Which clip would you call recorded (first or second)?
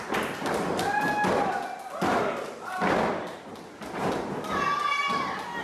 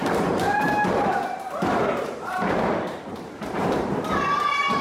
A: first